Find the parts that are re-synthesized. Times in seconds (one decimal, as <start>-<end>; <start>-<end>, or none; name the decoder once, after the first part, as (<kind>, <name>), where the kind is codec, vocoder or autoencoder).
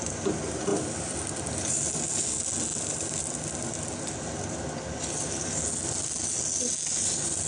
0.7-1.9 (vocoder, BigVGAN v2); 2.7-3.2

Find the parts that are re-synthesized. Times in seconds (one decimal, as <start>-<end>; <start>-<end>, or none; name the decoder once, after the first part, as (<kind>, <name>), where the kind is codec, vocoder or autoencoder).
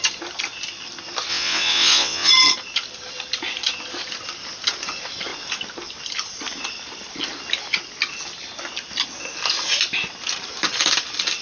1.3-2.3 (vocoder, WaveNeXt)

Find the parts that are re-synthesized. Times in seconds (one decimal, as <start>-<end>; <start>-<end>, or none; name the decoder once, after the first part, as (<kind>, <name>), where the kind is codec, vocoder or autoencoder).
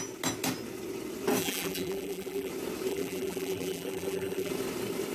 1.4-2.5 (vocoder, BigVGAN v2); 2.9-4.5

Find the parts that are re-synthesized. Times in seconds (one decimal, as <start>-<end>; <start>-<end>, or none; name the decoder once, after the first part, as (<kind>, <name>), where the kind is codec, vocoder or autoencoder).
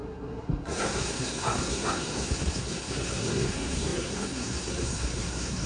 0.0-5.7 (codec, SNAC)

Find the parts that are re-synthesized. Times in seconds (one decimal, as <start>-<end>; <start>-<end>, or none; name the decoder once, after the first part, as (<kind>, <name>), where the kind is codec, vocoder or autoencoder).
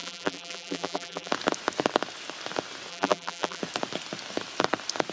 0.0-1.3 (vocoder, BigVGAN v2); 2.9-3.6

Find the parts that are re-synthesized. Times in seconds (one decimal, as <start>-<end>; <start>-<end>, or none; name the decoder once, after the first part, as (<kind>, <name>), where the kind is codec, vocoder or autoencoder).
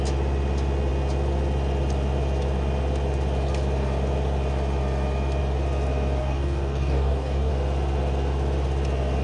6.2-7.5 (codec, DAC)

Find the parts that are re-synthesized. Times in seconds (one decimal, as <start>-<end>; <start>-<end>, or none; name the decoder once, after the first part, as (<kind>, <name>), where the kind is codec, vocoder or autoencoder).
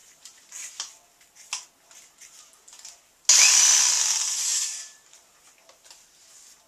none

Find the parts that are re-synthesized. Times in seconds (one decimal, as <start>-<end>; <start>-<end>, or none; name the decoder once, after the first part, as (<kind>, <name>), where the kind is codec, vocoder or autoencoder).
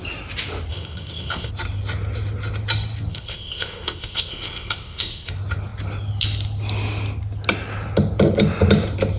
0.7-1.5 (codec, ZipCodec); 3.1-5.3